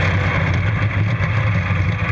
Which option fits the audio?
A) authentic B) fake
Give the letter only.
A